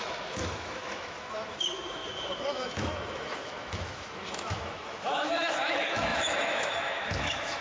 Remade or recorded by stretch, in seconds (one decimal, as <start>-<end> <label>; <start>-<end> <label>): 0.0-7.6 remade